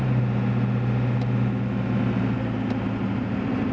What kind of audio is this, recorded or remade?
recorded